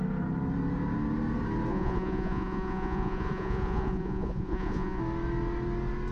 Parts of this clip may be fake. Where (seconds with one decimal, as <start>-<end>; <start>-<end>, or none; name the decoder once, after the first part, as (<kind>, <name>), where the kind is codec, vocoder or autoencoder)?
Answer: 1.7-5.0 (vocoder, Vocos)